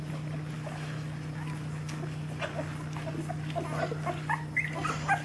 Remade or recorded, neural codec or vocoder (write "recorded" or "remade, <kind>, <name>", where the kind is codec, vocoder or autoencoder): recorded